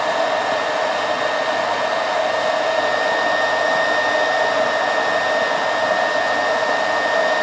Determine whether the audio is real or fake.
real